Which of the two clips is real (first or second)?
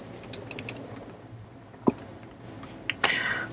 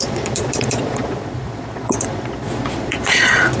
first